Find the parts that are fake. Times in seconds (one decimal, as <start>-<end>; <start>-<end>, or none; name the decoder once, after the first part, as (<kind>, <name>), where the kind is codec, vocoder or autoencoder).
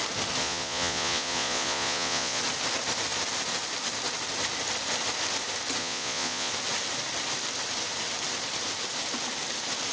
0.4-2.4 (vocoder, Vocos); 5.8-6.5